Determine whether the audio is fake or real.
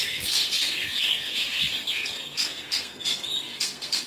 fake